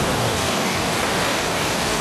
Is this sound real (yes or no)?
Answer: no